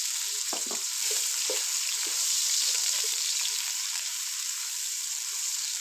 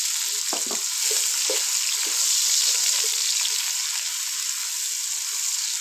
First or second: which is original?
second